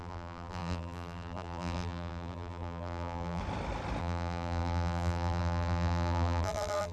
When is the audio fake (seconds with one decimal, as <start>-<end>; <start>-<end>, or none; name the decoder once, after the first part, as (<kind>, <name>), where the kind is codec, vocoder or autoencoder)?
0.0-3.4 (vocoder, BigVGAN v2); 4.0-6.9